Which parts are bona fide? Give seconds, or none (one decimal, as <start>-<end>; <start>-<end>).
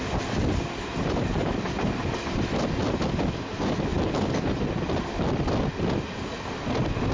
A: 0.0-0.9; 1.5-7.1